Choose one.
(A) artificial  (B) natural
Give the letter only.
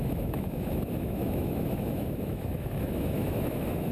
A